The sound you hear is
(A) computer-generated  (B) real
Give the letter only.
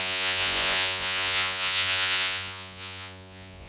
A